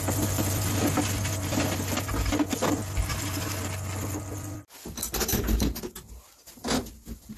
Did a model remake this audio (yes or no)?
no